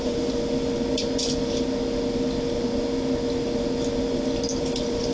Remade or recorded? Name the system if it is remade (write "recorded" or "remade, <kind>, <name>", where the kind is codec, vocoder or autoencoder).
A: recorded